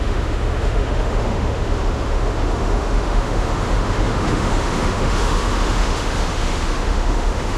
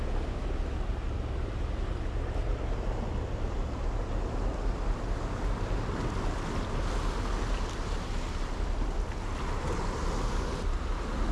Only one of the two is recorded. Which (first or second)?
second